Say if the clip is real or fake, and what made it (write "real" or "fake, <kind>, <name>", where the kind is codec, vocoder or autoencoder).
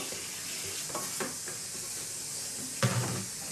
real